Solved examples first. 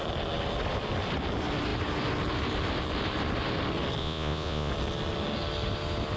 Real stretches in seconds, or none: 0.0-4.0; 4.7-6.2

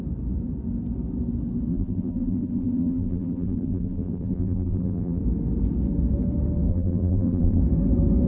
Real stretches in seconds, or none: 0.0-1.7; 5.2-6.7; 7.6-8.3

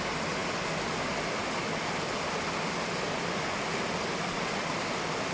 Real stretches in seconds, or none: 0.0-5.3

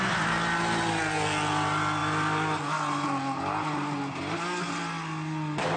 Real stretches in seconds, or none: 0.0-5.8

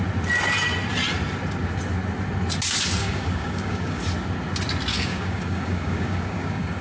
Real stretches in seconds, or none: 0.0-3.0; 4.0-4.9

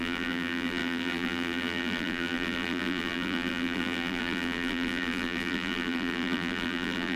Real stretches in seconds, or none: none

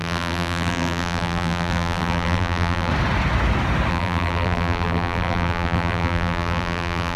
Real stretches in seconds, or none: 2.9-3.9